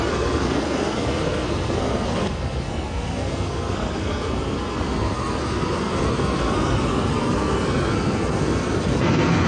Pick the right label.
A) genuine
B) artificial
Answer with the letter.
B